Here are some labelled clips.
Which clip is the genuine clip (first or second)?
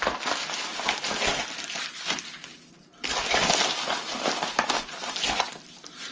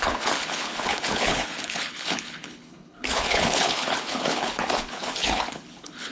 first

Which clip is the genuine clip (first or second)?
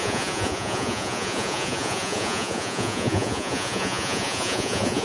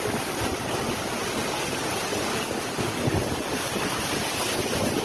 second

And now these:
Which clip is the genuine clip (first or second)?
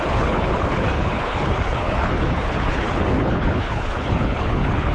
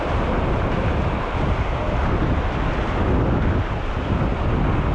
second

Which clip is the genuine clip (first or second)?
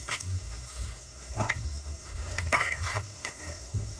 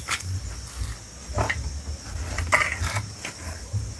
second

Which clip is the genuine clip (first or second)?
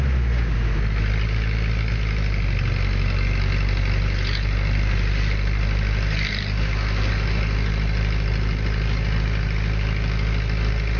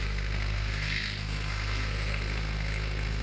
first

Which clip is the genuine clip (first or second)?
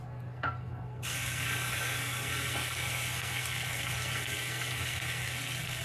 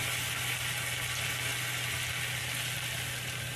second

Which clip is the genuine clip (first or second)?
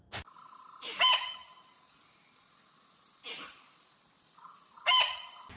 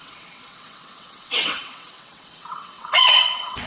first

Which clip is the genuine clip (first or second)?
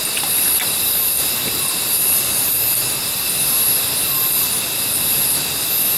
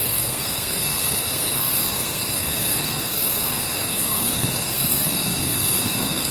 first